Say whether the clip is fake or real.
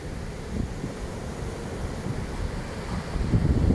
real